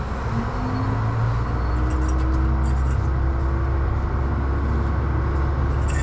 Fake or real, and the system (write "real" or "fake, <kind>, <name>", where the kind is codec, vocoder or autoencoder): real